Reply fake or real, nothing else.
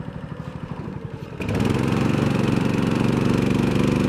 fake